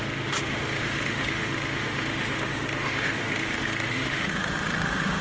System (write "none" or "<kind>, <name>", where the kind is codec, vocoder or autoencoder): autoencoder, DAC-VAE